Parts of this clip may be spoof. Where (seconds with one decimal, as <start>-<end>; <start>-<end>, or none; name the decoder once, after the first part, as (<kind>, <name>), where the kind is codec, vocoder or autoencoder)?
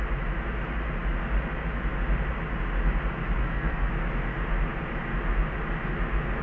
3.4-3.9 (codec, SNAC)